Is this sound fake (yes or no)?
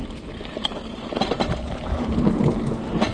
yes